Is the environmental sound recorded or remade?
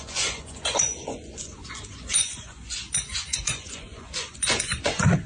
remade